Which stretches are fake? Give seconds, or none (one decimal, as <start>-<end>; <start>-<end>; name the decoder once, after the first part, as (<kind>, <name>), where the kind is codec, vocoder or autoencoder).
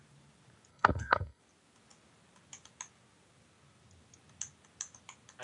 0.7-1.4 (codec, SNAC)